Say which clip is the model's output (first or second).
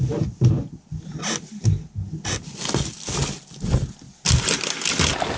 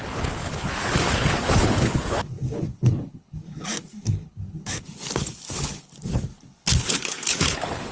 second